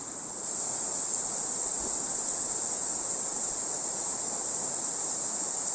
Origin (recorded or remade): recorded